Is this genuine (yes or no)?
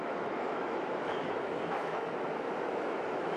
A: no